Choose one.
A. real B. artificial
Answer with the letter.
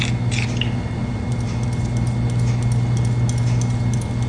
A